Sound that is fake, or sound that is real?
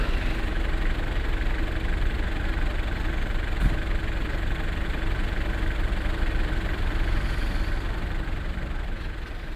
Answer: real